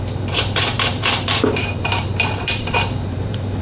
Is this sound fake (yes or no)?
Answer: yes